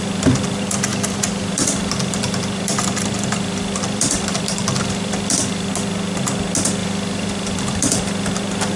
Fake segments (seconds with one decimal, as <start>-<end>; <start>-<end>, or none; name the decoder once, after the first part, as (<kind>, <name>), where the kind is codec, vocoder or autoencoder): 0.9-5.7 (vocoder, BigVGAN v2); 6.8-7.8